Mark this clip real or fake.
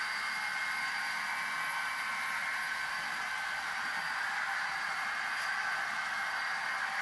real